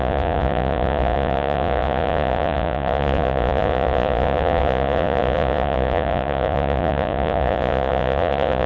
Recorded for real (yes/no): no